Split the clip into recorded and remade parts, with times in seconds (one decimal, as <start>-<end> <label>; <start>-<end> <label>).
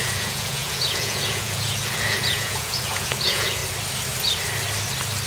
0.0-3.6 remade; 3.6-5.3 recorded